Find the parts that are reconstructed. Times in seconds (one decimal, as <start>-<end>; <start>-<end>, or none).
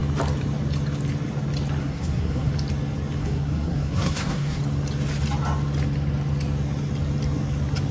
1.8-2.5; 3.2-4.6